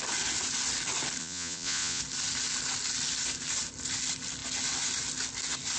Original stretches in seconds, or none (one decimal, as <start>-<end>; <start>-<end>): 0.0-1.2; 2.0-5.8